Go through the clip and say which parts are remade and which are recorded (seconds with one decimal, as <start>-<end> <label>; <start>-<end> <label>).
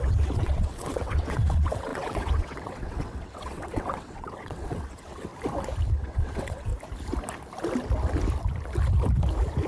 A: 0.0-5.3 remade; 5.3-5.9 recorded; 5.9-6.7 remade; 6.7-9.7 recorded